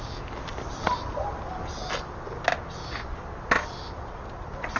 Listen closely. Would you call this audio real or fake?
real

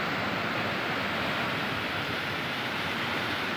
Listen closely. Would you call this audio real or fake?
real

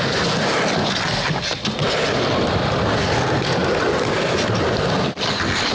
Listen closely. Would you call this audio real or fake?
real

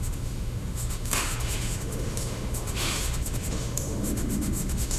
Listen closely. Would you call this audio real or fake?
fake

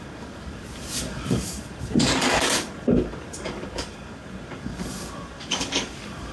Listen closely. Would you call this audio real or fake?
fake